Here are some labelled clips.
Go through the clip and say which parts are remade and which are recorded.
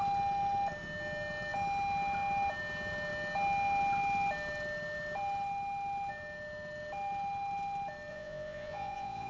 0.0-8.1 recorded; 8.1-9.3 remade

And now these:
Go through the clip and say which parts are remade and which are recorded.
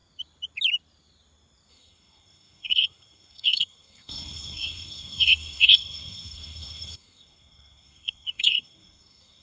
0.0-1.7 recorded; 1.7-9.4 remade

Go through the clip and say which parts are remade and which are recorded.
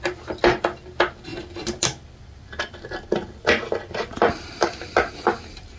0.0-5.8 recorded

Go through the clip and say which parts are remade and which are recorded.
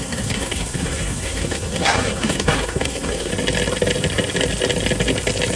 0.0-3.3 remade; 3.3-5.6 recorded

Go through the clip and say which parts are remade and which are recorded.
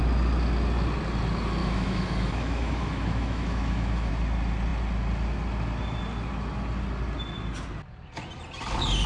0.0-1.6 recorded; 1.6-4.1 remade; 4.1-9.1 recorded